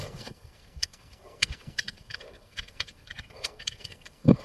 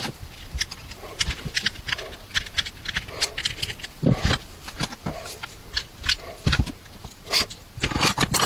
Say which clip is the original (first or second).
second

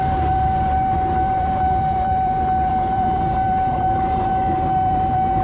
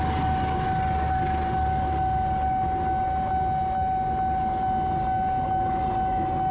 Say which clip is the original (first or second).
second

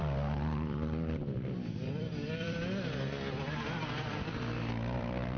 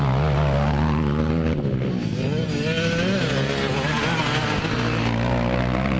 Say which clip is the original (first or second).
second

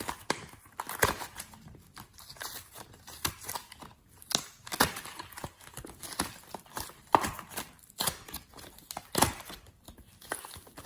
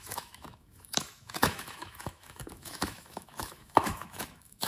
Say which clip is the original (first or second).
first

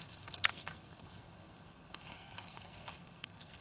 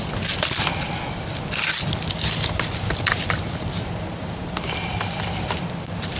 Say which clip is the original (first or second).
second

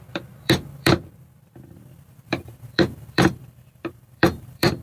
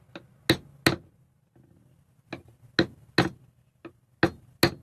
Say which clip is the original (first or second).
second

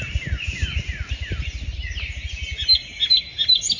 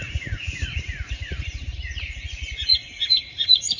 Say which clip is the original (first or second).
first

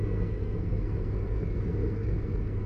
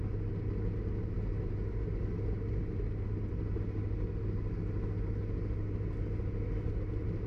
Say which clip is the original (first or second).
second